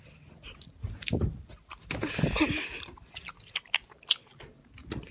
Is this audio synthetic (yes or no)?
no